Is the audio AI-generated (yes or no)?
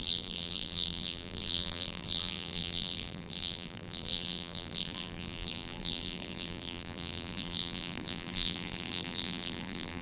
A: yes